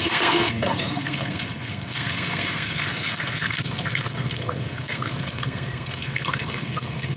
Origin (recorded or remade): remade